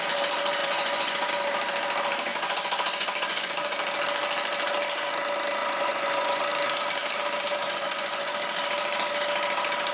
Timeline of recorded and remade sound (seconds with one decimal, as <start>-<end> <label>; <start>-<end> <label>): 0.0-0.6 recorded; 0.6-1.3 remade; 1.3-2.3 recorded; 2.3-3.5 remade; 3.5-5.6 recorded; 5.6-6.4 remade; 6.4-7.6 recorded; 7.6-8.3 remade; 8.3-9.9 recorded